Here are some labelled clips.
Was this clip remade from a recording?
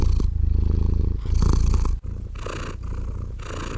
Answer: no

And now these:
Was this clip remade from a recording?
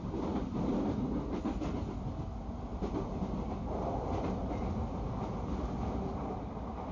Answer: no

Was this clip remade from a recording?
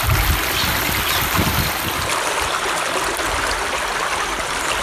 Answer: no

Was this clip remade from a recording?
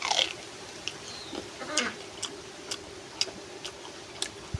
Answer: no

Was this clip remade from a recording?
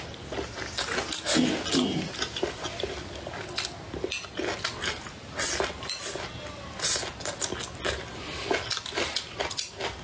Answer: no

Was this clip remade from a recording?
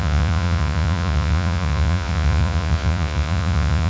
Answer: yes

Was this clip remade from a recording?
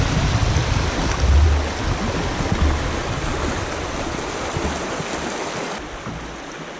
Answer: no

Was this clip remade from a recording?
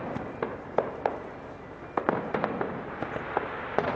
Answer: no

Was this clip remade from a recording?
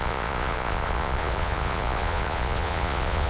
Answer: yes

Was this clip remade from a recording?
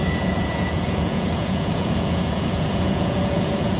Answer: yes